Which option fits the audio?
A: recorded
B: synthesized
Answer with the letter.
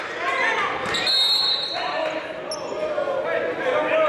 A